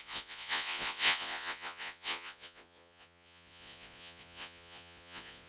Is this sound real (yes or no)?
no